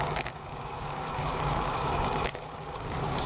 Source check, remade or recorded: remade